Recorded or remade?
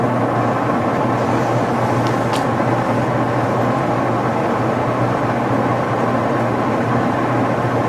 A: recorded